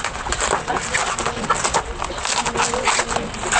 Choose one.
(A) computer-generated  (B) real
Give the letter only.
B